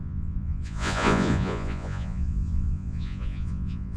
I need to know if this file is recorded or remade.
remade